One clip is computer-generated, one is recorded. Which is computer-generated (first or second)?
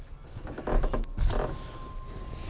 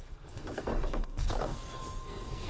second